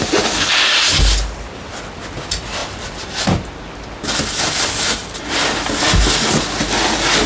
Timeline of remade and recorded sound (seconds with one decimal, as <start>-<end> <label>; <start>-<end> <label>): 0.0-7.3 recorded